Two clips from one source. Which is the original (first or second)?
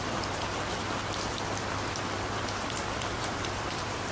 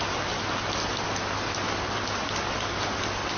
second